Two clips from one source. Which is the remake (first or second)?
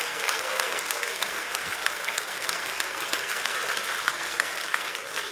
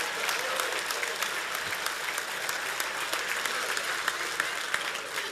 first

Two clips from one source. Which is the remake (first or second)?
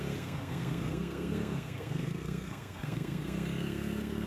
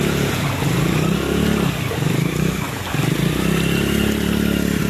first